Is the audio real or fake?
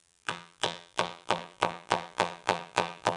fake